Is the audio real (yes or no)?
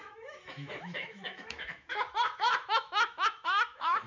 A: no